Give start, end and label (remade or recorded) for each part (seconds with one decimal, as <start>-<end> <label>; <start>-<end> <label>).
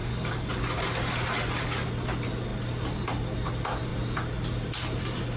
0.0-0.5 remade; 0.5-5.4 recorded